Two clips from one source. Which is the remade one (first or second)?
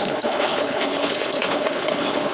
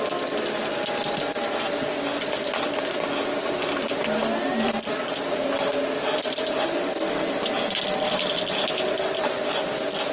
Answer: first